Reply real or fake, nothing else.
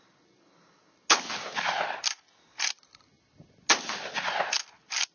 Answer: real